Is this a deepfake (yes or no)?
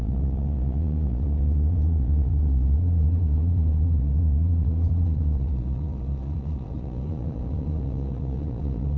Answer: yes